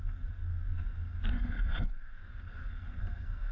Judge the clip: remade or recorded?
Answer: remade